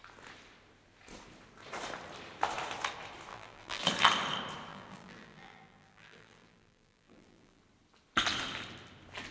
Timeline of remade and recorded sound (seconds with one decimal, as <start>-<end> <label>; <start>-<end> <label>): 0.0-3.3 recorded; 3.3-3.8 remade; 3.8-4.7 recorded; 4.7-7.6 remade; 7.6-9.3 recorded